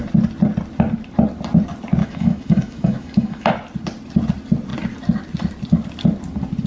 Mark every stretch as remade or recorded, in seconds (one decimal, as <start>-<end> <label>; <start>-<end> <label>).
0.0-2.0 recorded; 2.0-3.5 remade; 3.5-6.7 recorded